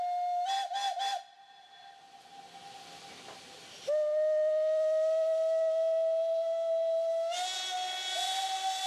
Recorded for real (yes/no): yes